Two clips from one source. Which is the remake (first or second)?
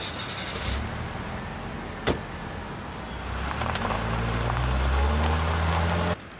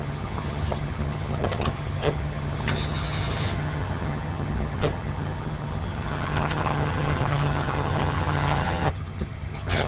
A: second